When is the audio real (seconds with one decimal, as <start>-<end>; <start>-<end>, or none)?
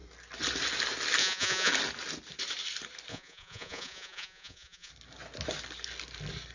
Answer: 0.0-1.2; 1.7-3.1; 4.9-6.5